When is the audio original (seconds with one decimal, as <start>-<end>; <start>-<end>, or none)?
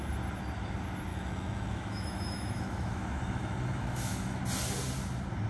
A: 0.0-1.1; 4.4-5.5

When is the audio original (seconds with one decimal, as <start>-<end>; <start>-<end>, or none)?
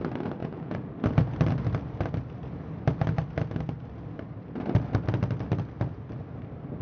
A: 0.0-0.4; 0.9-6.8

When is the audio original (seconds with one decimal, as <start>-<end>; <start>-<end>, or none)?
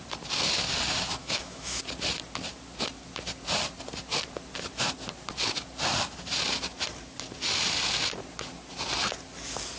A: 0.0-1.2; 1.8-9.8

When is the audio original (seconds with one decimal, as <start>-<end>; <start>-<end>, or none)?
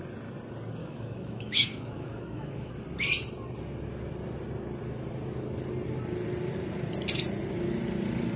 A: 0.0-0.8; 2.7-8.4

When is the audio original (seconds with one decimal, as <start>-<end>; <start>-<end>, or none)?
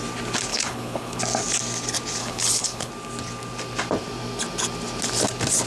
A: 0.0-0.5; 1.2-2.2; 2.9-5.7